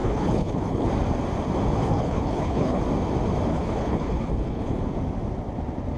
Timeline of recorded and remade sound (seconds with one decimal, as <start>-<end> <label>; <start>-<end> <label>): 0.0-0.9 remade; 0.9-1.8 recorded; 1.8-2.8 remade; 2.8-3.5 recorded; 3.5-4.8 remade; 4.8-6.0 recorded